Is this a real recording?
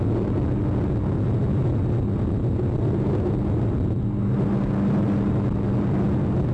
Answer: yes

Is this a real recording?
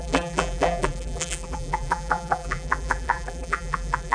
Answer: no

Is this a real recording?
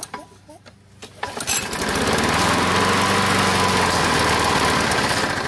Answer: yes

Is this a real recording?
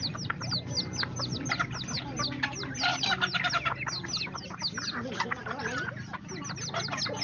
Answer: yes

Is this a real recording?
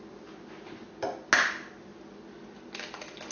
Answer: yes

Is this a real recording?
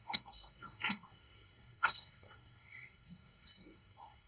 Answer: no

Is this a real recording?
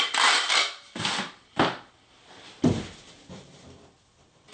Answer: no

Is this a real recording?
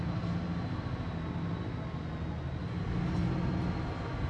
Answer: yes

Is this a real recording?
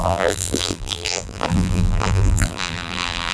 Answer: no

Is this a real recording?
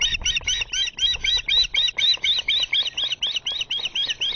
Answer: yes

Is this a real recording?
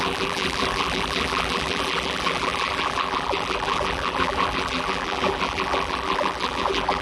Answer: no